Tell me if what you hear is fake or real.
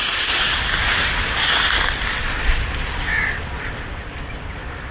real